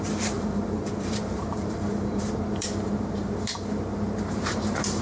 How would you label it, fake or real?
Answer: fake